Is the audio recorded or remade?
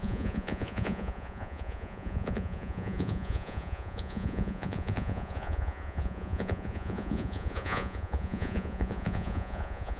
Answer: remade